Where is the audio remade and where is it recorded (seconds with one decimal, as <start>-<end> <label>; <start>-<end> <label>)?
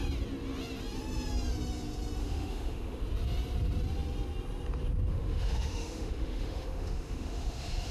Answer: 0.0-2.2 recorded; 2.2-3.0 remade; 3.0-5.1 recorded; 5.1-7.9 remade